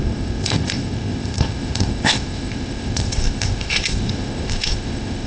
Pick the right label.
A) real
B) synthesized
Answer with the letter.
B